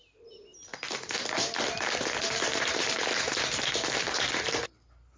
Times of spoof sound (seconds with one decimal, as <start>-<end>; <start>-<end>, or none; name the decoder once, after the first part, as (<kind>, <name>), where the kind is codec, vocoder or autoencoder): none